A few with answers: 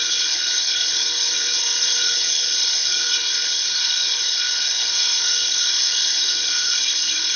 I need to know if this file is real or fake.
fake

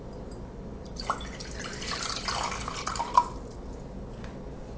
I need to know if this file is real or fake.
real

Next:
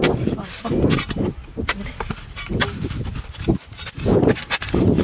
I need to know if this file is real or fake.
real